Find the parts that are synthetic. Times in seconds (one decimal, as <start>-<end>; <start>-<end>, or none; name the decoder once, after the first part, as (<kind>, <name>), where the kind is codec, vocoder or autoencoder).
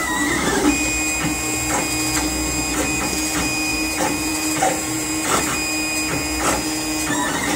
0.0-0.6 (vocoder, BigVGAN v2); 3.7-5.4